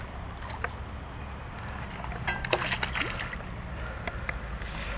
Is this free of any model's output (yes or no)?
yes